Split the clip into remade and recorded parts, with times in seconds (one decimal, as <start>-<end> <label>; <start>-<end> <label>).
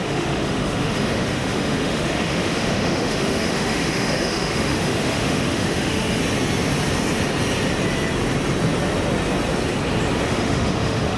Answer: 0.0-6.2 remade; 6.2-10.2 recorded; 10.2-11.2 remade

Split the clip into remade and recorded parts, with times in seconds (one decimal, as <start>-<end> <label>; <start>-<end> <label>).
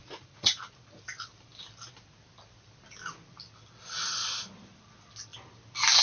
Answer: 0.0-0.6 remade; 0.6-6.0 recorded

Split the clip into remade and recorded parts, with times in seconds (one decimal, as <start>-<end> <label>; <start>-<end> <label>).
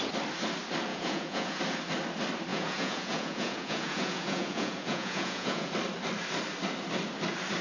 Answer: 0.0-0.9 recorded; 0.9-1.6 remade; 1.6-2.5 recorded; 2.5-5.7 remade; 5.7-7.6 recorded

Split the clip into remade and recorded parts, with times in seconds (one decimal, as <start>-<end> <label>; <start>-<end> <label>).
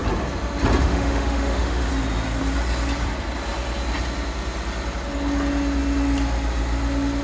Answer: 0.0-0.8 recorded; 0.8-1.9 remade; 1.9-7.2 recorded